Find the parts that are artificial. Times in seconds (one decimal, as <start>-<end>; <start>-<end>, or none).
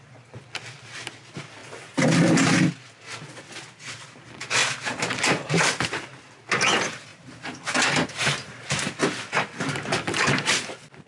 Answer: 4.6-5.5; 7.1-9.0